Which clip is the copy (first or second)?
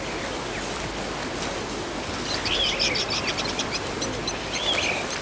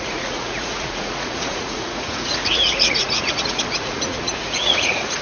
second